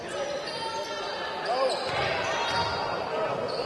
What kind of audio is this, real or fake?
real